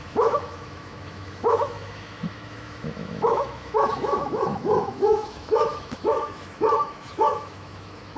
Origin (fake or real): fake